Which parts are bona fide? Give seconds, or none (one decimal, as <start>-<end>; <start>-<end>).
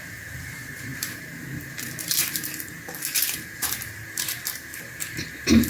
none